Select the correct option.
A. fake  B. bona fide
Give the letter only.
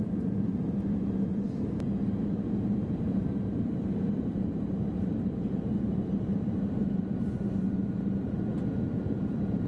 A